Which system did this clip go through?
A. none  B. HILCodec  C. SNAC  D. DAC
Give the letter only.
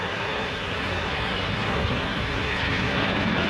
C